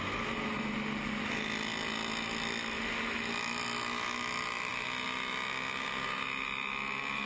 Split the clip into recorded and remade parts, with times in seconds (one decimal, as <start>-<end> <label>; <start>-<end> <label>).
0.0-7.3 recorded